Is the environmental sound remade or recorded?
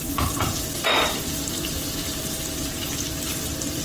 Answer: remade